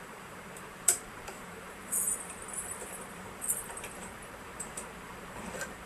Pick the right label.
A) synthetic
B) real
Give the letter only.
A